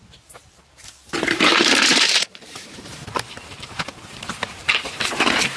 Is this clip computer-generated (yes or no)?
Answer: yes